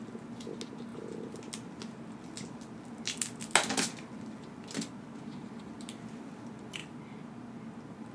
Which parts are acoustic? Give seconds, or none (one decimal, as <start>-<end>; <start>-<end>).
0.0-8.1